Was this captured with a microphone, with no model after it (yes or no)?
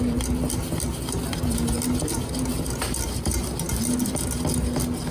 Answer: yes